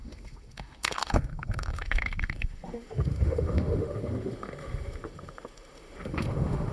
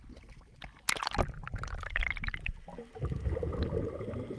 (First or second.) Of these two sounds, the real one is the second